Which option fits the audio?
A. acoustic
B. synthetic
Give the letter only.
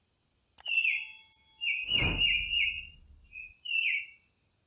A